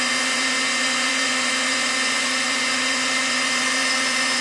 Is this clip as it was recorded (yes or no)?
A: no